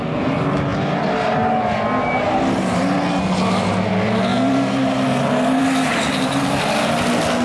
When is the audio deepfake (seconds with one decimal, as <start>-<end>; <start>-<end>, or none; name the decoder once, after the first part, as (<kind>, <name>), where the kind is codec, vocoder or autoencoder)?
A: none